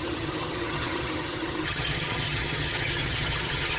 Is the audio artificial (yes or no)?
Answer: yes